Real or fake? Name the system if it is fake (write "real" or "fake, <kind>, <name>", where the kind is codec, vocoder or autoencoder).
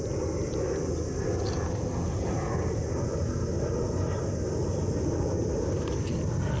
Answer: real